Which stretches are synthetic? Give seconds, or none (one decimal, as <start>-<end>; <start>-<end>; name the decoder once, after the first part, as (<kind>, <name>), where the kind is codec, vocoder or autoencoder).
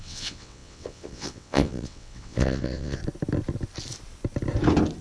0.0-3.0 (vocoder, WaveNeXt)